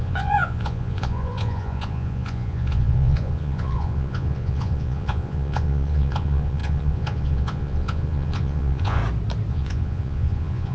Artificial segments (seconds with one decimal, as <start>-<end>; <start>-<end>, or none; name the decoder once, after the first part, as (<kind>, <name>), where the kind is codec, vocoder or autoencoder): 0.0-9.0 (vocoder, Vocos); 9.5-10.7